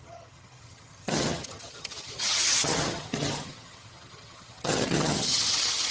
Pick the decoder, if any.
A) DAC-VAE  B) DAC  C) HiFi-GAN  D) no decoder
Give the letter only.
C